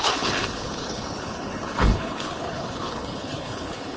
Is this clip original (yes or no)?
no